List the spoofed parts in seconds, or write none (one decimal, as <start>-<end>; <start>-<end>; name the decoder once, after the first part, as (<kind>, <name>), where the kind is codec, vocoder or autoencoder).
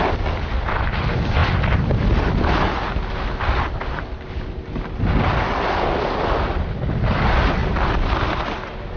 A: none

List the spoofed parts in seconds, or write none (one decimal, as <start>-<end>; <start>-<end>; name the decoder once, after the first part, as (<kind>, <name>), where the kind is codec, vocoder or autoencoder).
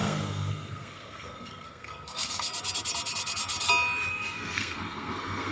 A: 0.0-2.5 (codec, SNAC); 4.1-5.5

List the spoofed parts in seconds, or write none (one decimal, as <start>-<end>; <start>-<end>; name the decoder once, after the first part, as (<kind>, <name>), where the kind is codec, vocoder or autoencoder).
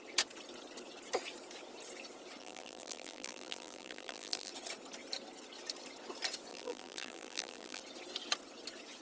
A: 2.4-4.5 (vocoder, BigVGAN v2); 6.5-7.8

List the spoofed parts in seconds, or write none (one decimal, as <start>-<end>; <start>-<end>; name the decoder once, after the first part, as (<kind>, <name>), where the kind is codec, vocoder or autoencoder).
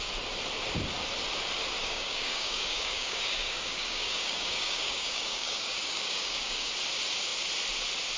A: 1.8-6.7 (codec, DAC)